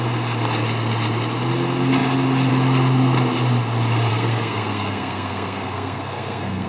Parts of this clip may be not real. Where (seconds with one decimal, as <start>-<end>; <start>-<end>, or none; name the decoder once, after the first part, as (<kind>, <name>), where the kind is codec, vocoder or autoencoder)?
4.1-6.7 (codec, SNAC)